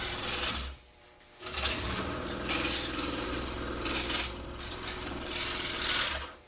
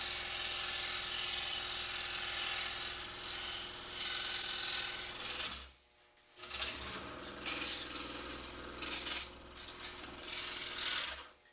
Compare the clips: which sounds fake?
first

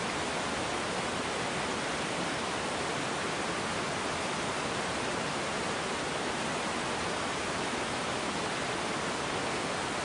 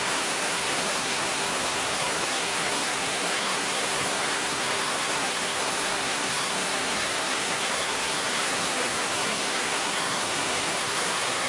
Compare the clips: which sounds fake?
second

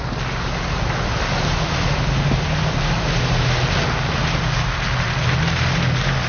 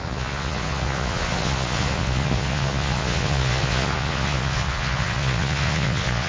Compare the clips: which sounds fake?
second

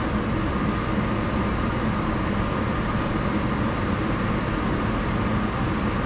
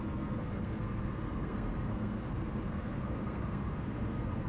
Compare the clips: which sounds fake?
second